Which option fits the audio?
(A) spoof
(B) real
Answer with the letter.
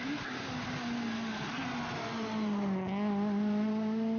B